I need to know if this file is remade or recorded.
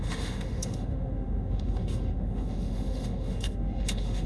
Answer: remade